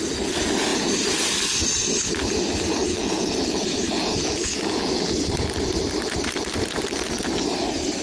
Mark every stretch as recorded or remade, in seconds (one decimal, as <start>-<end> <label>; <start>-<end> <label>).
0.0-2.9 recorded; 2.9-5.2 remade; 5.2-8.0 recorded